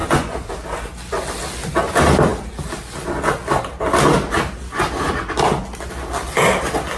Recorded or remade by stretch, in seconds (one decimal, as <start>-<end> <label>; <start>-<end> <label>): 0.0-0.5 remade; 0.5-7.0 recorded